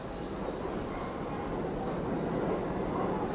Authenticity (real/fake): real